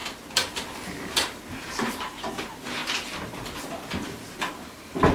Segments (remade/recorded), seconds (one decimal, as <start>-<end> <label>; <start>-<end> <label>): 0.0-1.0 recorded; 1.0-2.8 remade; 2.8-3.9 recorded; 3.9-5.1 remade